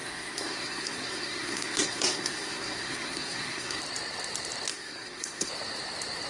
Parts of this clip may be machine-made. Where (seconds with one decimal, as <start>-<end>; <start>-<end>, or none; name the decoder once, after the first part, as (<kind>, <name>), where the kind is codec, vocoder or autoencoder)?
0.0-3.8 (codec, SNAC); 4.7-5.5